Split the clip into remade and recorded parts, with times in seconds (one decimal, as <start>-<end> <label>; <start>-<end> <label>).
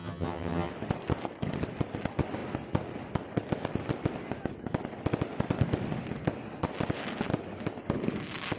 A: 0.0-0.7 remade; 0.7-8.6 recorded